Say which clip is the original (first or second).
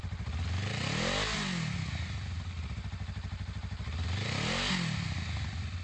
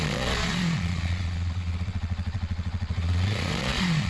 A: first